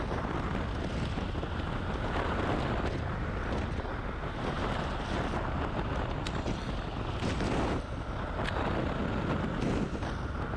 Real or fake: real